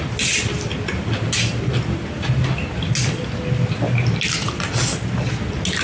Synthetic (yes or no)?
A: no